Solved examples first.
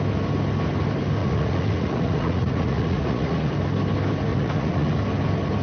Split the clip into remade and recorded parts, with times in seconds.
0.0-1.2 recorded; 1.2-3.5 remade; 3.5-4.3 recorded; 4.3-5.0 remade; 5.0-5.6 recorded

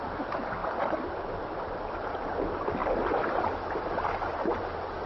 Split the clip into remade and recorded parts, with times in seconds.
0.0-5.1 recorded

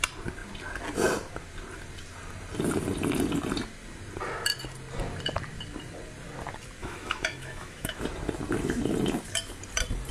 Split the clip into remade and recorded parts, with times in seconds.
0.0-6.8 recorded; 6.8-8.0 remade; 8.0-10.1 recorded

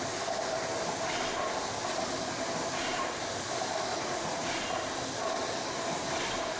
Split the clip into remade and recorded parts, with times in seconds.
0.0-3.9 recorded; 3.9-4.5 remade; 4.5-6.6 recorded

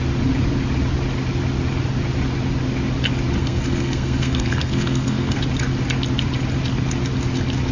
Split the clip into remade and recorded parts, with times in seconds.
0.0-3.4 recorded; 3.4-5.4 remade; 5.4-7.7 recorded